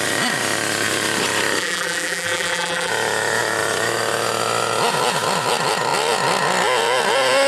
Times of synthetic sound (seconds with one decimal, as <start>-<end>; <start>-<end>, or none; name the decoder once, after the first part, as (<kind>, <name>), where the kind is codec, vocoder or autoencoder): 1.6-2.9 (vocoder, BigVGAN v2)